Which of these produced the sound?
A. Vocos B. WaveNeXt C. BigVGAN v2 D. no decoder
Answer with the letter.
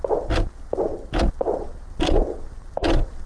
D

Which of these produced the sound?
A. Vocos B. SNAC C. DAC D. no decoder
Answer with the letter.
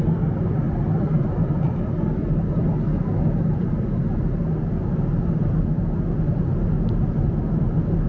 D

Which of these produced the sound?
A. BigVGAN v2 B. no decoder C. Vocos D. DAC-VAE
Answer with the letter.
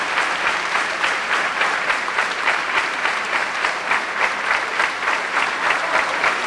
A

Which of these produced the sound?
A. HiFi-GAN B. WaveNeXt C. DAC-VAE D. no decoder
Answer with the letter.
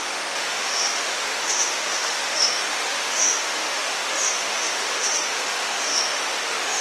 C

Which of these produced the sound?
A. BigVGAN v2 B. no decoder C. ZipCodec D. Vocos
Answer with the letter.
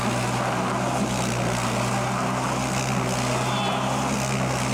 B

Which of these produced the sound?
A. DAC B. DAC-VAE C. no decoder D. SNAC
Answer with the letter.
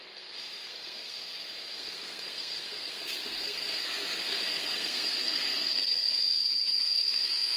D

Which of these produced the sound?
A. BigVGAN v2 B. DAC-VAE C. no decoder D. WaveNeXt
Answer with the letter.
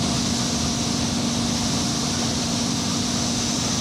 C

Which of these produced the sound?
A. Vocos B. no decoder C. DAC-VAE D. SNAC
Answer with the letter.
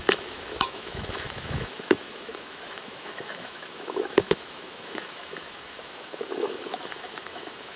C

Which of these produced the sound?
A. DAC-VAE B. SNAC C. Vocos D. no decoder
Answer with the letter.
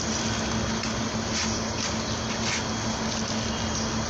D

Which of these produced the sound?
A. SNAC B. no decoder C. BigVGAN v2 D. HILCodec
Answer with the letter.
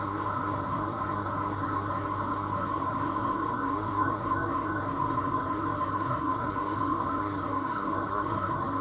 A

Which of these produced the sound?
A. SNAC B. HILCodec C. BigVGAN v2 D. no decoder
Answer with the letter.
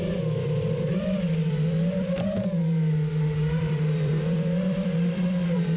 C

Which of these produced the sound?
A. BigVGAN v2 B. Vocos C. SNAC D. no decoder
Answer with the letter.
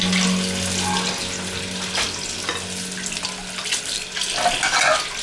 D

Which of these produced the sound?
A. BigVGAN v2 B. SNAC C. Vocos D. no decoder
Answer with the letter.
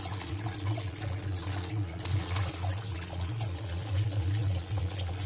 C